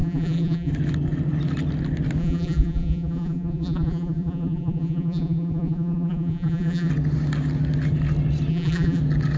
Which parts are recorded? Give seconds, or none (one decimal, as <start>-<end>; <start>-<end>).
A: 0.7-2.2; 6.9-8.5; 9.0-9.4